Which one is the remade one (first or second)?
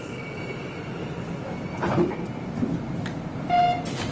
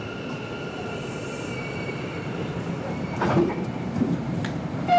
second